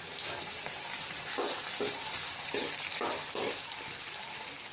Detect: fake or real real